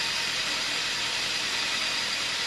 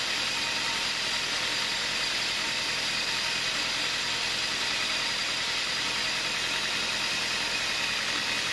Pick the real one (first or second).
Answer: first